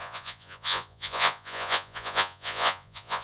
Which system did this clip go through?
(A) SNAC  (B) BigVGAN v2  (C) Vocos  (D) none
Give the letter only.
C